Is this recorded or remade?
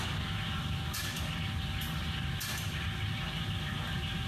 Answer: recorded